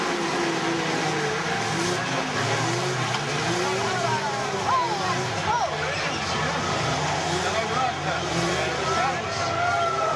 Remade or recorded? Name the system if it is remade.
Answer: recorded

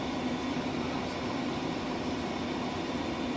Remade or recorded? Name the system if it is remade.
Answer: recorded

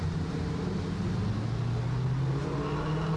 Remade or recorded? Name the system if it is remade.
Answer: recorded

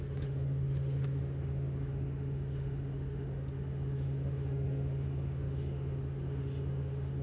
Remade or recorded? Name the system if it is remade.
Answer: remade, autoencoder, DAC-VAE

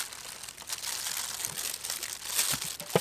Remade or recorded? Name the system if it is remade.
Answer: recorded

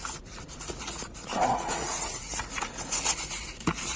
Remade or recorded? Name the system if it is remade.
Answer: remade, vocoder, Vocos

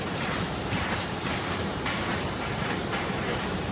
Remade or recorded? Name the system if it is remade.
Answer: remade, vocoder, BigVGAN v2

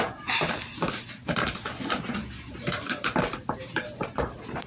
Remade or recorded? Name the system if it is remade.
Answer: remade, vocoder, BigVGAN v2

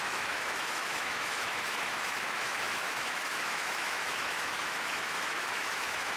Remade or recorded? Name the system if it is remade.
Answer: remade, autoencoder, DAC-VAE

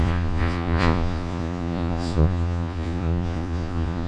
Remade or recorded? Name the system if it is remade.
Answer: remade, vocoder, Vocos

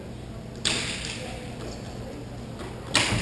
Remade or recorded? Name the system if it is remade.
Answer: recorded